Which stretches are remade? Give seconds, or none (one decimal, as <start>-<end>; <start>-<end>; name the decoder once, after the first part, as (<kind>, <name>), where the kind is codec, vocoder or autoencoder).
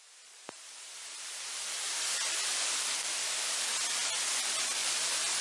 0.0-5.4 (vocoder, BigVGAN v2)